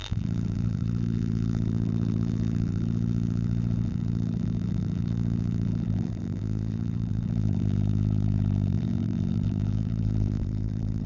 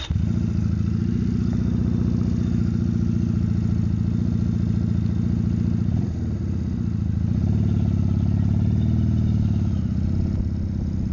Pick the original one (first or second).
second